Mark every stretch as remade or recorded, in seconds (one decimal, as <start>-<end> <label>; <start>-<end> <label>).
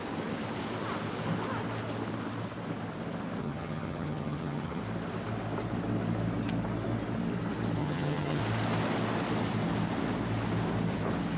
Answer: 0.0-3.4 recorded; 3.4-4.8 remade; 4.8-7.8 recorded; 7.8-8.4 remade; 8.4-11.4 recorded